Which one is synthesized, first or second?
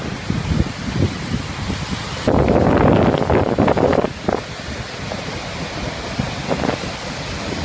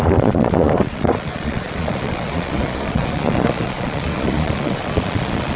second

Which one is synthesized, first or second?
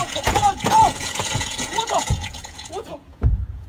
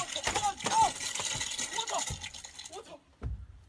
first